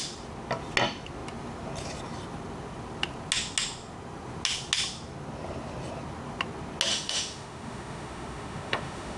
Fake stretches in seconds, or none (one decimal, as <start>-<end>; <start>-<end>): 6.9-9.2